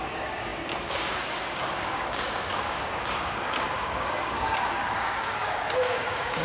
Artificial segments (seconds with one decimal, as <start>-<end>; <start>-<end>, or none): 0.0-6.4